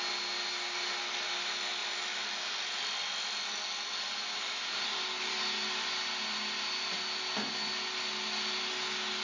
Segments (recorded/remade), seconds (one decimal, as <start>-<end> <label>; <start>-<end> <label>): 0.0-9.2 recorded